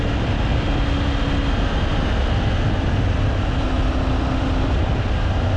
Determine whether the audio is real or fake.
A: real